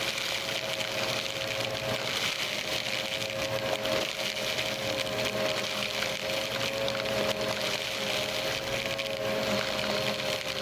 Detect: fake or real real